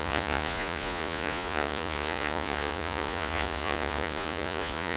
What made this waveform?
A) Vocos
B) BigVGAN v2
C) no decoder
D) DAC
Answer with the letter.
A